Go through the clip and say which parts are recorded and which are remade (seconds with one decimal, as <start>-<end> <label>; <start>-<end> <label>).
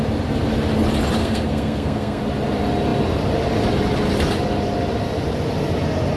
0.0-1.2 recorded; 1.2-2.2 remade; 2.2-6.2 recorded